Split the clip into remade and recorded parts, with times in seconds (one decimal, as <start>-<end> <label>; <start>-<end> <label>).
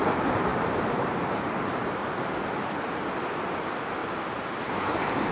0.0-2.0 remade; 2.0-3.5 recorded; 3.5-4.0 remade; 4.0-4.5 recorded; 4.5-5.3 remade